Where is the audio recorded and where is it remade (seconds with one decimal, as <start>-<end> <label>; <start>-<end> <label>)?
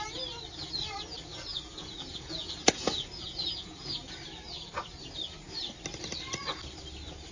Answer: 0.0-1.5 recorded; 1.5-3.9 remade; 3.9-7.3 recorded